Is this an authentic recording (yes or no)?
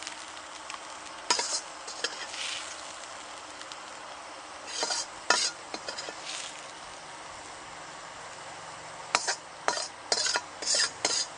yes